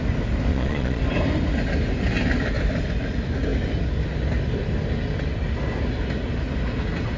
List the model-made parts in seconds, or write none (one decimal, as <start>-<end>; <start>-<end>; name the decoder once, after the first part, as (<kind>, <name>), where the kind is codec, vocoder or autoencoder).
0.5-1.0 (vocoder, Vocos)